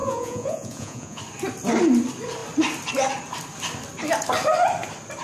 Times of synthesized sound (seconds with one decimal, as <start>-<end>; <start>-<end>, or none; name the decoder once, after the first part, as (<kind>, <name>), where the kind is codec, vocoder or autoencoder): 0.0-1.2 (vocoder, Vocos)